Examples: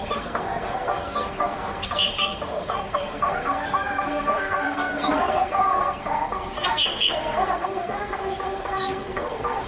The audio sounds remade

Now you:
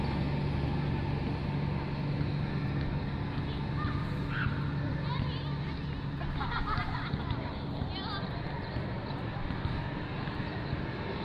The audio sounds recorded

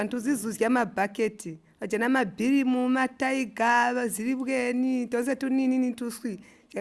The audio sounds recorded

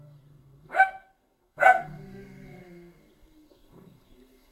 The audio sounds remade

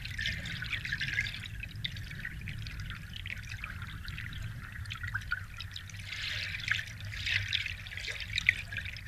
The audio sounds recorded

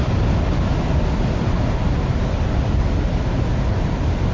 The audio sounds recorded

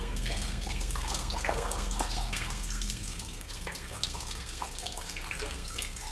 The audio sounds remade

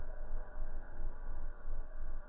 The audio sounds remade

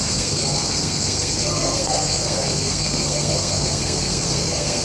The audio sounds remade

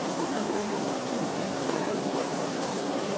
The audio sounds remade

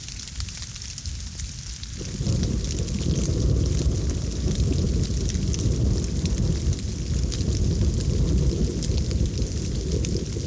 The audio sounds recorded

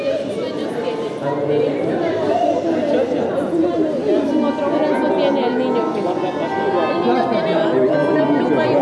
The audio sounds recorded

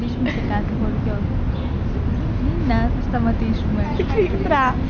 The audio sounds recorded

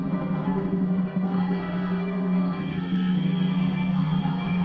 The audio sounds remade